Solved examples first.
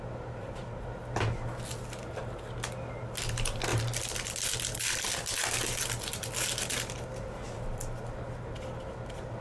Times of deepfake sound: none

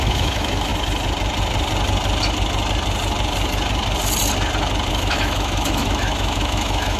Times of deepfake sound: 0.0-0.7 (autoencoder, DAC-VAE); 4.9-7.0

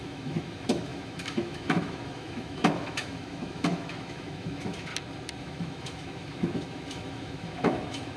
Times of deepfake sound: 0.0-4.9 (autoencoder, DAC-VAE); 5.4-8.2

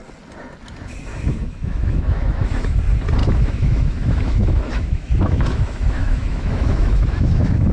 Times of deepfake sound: 1.1-2.8 (autoencoder, DAC-VAE); 3.2-7.7

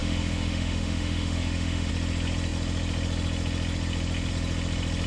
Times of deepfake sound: 0.0-1.9 (autoencoder, DAC-VAE)

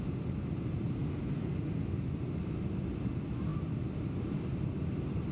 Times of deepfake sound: none

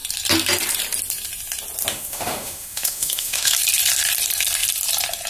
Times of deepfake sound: 1.9-3.5 (autoencoder, DAC-VAE)

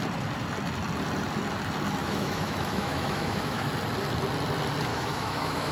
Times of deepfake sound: 2.0-3.7 (autoencoder, DAC-VAE); 4.9-5.7